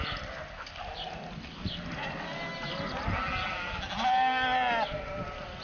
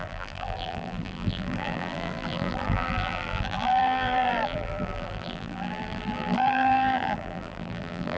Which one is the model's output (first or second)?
second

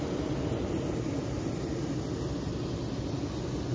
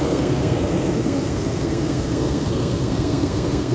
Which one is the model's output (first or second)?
second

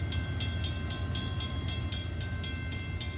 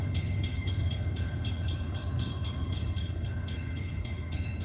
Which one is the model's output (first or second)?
second